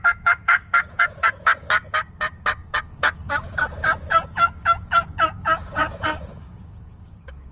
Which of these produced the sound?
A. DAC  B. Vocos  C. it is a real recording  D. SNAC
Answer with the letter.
A